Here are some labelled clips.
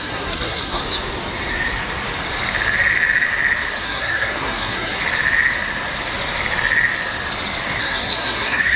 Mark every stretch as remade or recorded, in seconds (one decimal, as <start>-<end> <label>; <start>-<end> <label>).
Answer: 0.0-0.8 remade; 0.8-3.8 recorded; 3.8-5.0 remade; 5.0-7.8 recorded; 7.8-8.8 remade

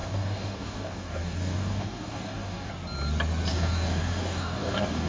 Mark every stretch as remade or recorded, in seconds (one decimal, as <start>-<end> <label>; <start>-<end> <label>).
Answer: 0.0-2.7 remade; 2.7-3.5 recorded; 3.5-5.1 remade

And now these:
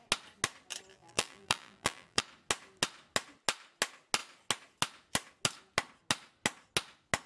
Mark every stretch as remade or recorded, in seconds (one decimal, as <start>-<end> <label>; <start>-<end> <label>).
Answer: 0.0-0.9 recorded; 0.9-2.2 remade; 2.2-7.3 recorded